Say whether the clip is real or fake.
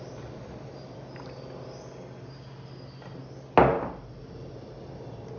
real